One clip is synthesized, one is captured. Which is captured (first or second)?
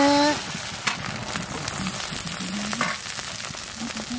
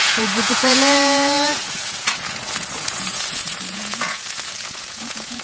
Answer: first